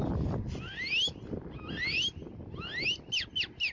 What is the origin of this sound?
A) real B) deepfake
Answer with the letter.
A